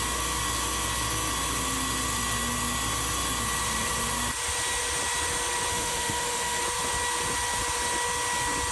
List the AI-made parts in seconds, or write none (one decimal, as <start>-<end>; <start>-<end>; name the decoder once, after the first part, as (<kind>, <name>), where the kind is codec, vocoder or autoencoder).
5.7-6.6 (autoencoder, DAC-VAE)